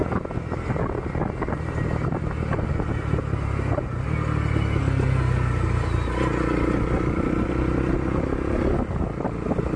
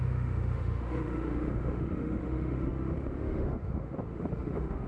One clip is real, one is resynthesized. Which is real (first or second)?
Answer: first